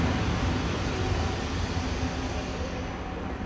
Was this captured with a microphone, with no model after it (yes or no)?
yes